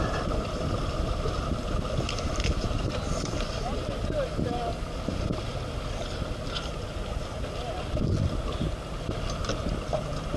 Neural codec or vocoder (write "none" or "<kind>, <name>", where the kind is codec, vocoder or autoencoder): none